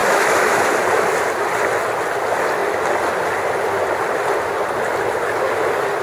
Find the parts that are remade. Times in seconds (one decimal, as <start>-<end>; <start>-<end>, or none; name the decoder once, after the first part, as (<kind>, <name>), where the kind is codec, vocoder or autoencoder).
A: 0.0-0.6 (autoencoder, DAC-VAE)